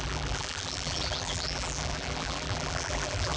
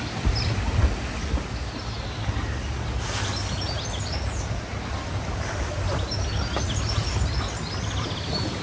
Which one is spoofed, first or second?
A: first